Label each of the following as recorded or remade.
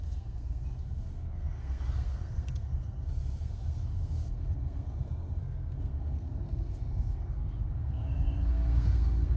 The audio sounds remade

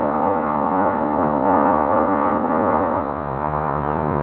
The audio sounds remade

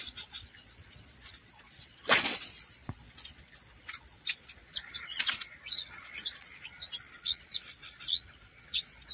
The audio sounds remade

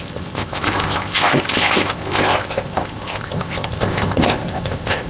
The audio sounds remade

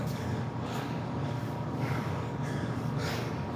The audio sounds remade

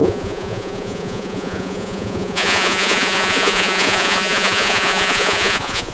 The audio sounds remade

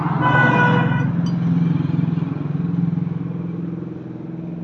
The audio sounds recorded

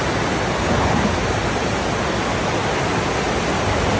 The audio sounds recorded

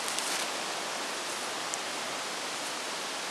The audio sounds recorded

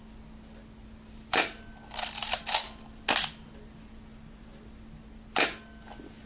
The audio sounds recorded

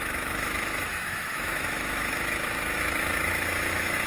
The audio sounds remade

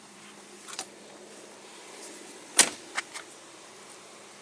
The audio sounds remade